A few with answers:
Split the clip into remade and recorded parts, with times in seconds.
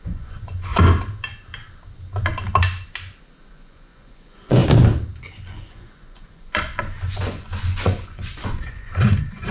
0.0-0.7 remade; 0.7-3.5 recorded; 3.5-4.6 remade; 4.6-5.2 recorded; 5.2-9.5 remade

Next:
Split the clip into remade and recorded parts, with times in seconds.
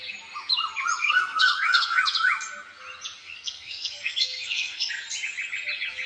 0.0-1.0 recorded; 1.0-2.0 remade; 2.0-3.2 recorded; 3.2-4.9 remade; 4.9-6.1 recorded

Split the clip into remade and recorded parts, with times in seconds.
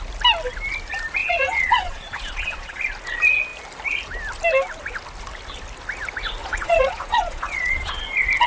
0.0-1.2 recorded; 1.2-2.8 remade; 2.8-6.4 recorded; 6.4-8.0 remade; 8.0-8.5 recorded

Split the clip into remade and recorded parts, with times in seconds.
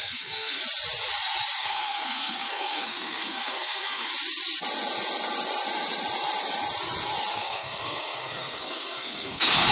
0.0-0.6 remade; 0.6-1.6 recorded; 1.6-4.1 remade; 4.1-7.3 recorded; 7.3-9.7 remade